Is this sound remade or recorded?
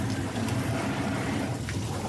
recorded